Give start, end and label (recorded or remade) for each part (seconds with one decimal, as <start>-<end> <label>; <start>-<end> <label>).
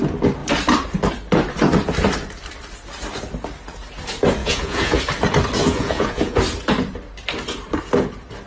0.0-4.4 recorded; 4.4-5.0 remade; 5.0-5.6 recorded; 5.6-6.4 remade; 6.4-8.5 recorded